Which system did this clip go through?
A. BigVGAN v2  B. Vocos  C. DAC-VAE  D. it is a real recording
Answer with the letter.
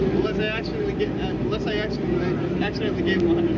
D